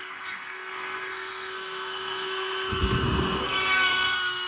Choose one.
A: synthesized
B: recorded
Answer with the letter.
A